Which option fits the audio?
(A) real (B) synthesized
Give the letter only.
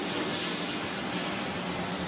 A